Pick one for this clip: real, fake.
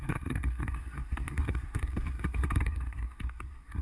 fake